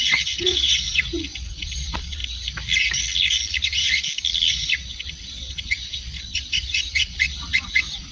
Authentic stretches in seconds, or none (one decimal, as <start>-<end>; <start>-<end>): 2.2-4.5